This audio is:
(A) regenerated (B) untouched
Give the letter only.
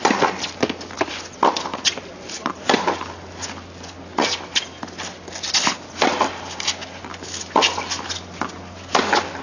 B